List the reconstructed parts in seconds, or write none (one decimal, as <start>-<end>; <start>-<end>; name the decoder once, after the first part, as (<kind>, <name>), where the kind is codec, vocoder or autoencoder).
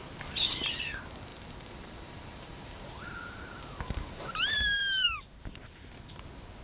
1.3-5.2 (vocoder, BigVGAN v2)